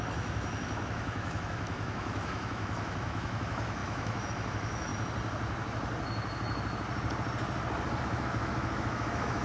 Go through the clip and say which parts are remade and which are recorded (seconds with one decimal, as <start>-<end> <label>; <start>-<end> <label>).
0.0-4.9 remade; 4.9-8.0 recorded; 8.0-9.4 remade